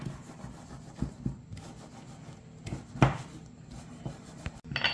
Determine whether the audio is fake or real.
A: real